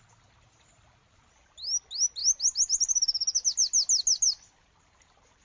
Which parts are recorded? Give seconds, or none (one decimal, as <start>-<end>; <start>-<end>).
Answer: 0.0-5.4